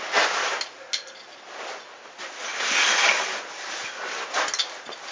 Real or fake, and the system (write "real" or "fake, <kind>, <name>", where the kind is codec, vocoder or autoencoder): real